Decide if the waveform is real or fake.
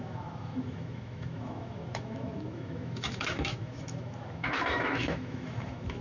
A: fake